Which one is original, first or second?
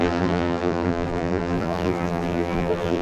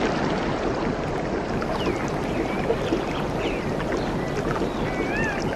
second